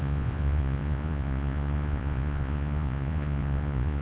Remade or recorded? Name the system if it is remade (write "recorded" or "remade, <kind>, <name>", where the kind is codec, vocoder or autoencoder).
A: remade, vocoder, Vocos